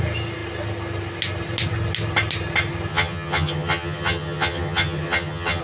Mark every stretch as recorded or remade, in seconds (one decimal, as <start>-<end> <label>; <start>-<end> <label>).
0.0-2.9 recorded; 2.9-5.6 remade